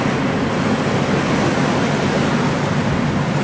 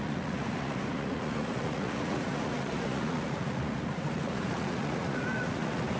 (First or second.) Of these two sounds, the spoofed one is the second